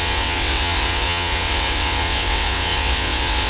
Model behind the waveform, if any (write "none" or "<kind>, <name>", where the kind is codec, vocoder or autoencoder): vocoder, WaveNeXt